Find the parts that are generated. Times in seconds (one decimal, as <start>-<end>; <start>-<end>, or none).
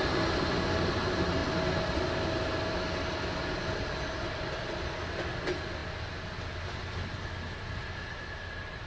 none